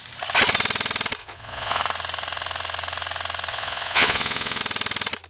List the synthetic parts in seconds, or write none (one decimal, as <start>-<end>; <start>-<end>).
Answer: 1.2-1.8; 3.5-4.6